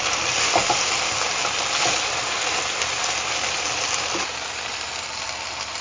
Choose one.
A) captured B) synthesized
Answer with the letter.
A